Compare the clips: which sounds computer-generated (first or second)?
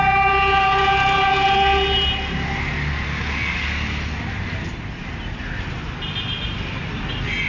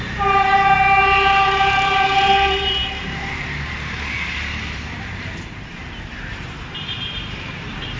second